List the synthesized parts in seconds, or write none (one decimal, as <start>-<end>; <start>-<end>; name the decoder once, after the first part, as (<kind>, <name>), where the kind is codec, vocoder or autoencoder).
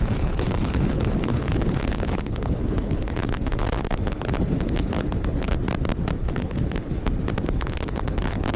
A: 0.0-5.6 (codec, HILCodec); 6.2-7.0; 7.5-8.6